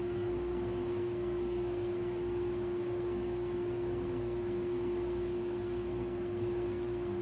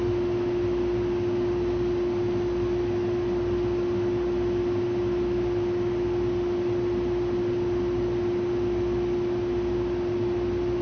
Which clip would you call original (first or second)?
second